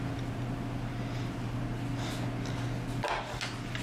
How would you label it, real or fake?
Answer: real